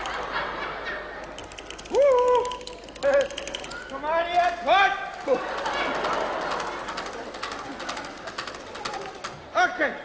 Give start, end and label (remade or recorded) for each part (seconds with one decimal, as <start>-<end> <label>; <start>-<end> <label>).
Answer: 0.0-10.0 recorded